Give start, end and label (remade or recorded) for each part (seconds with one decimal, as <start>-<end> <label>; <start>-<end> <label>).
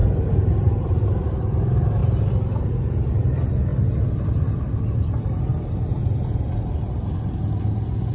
0.0-2.0 recorded; 2.0-2.7 remade; 2.7-8.1 recorded